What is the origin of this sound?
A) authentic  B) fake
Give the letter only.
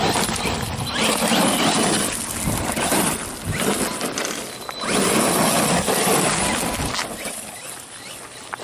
A